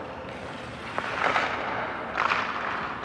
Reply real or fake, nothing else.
real